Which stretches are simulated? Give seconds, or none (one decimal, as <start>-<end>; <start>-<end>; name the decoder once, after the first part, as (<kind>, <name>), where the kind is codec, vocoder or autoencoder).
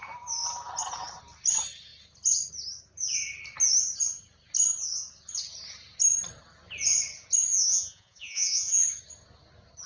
7.5-8.8 (vocoder, Vocos)